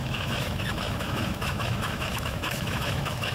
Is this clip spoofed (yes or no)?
yes